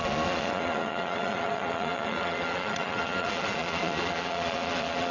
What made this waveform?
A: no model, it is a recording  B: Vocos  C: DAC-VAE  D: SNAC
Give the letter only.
B